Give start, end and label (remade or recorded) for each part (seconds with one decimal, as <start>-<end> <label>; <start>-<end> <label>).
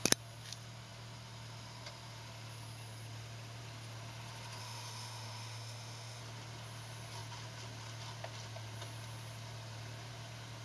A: 0.0-4.6 recorded; 4.6-6.2 remade; 6.2-10.6 recorded